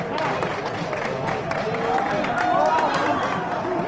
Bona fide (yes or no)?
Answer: yes